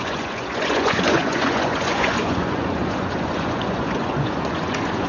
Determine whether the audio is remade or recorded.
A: remade